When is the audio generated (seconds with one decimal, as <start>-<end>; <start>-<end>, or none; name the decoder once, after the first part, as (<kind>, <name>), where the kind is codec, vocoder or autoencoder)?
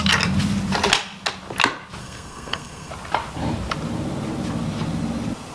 2.0-2.9 (codec, SNAC)